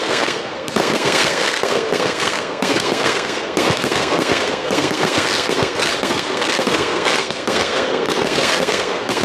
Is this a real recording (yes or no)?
no